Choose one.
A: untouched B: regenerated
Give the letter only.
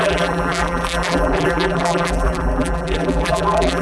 B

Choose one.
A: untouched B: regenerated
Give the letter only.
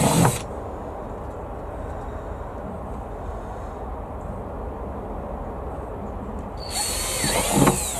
A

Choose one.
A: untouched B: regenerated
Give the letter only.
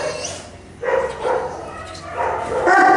A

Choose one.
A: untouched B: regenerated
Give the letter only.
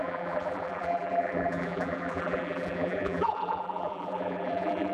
B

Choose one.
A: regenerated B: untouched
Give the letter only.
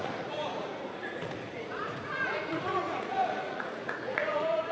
A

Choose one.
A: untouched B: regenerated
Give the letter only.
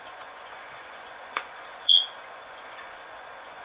B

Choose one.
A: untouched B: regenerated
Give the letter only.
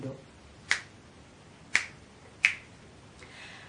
A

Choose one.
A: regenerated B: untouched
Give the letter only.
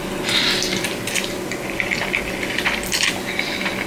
B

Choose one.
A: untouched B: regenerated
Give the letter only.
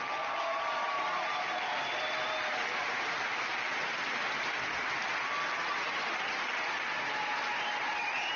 A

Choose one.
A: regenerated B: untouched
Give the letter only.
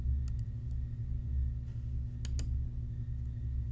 B